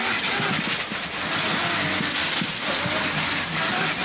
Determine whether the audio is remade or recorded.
recorded